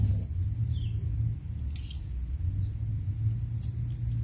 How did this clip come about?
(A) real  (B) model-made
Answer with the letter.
A